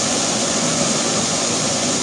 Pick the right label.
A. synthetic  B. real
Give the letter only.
A